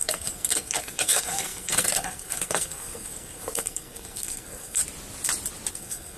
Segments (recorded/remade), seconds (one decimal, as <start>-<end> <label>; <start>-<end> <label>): 0.0-4.8 remade; 4.8-5.7 recorded; 5.7-6.2 remade